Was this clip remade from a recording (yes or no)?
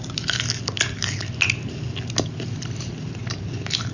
no